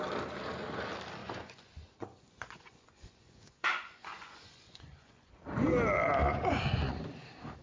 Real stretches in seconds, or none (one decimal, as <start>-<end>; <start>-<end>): 0.0-1.2; 5.3-6.2; 7.0-7.6